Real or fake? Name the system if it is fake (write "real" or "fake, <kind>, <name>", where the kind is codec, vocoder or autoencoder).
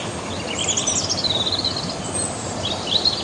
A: real